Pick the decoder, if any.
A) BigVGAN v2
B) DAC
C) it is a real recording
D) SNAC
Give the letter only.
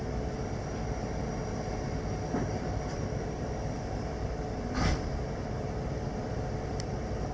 A